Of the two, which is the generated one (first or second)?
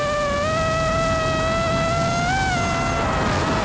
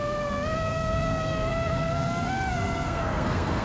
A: second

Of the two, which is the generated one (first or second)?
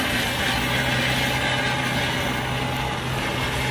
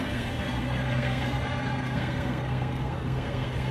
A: second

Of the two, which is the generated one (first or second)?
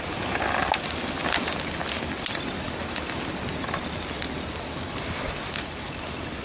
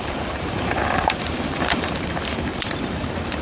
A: second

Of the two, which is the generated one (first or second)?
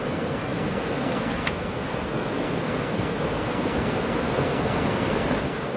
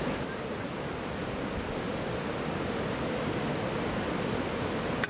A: first